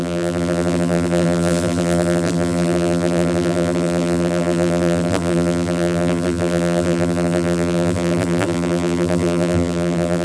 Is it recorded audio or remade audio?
remade